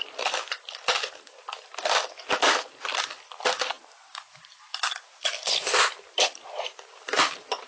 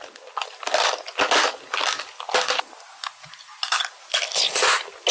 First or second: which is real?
second